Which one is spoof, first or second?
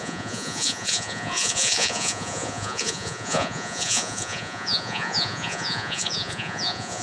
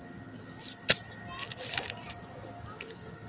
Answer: first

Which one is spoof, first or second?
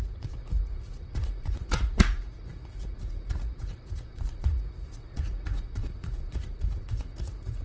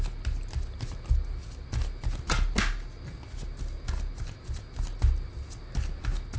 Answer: first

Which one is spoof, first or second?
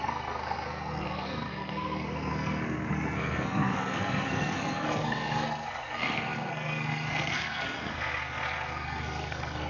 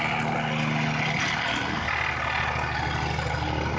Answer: first